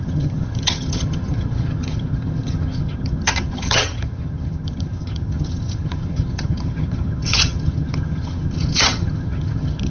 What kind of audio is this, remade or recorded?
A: remade